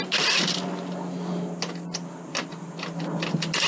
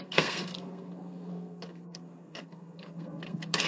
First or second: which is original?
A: first